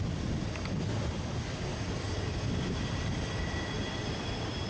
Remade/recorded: recorded